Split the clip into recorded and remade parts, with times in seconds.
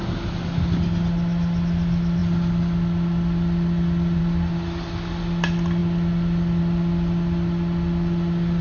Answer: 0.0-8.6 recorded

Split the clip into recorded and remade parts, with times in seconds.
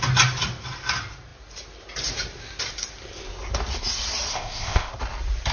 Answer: 0.0-4.3 recorded; 4.3-4.9 remade; 4.9-5.5 recorded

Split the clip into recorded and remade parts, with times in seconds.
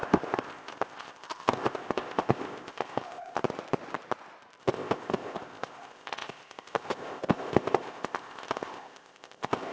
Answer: 0.0-3.4 remade; 3.4-4.6 recorded; 4.6-9.7 remade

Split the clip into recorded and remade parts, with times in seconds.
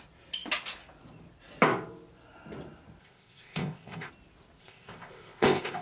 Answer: 0.0-3.0 recorded; 3.0-4.1 remade; 4.1-4.6 recorded; 4.6-5.8 remade